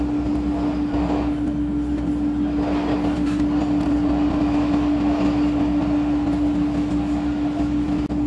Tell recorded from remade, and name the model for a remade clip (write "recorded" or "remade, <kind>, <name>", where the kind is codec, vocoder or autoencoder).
recorded